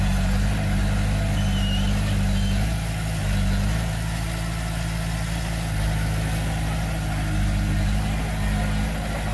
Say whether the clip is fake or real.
real